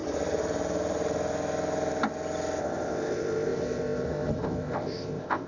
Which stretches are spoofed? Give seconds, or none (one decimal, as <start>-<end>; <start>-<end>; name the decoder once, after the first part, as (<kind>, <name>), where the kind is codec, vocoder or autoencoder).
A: 2.6-5.5 (codec, ZipCodec)